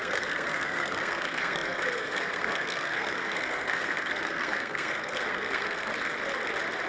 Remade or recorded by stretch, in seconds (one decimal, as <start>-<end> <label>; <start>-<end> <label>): 0.0-5.9 remade; 5.9-6.9 recorded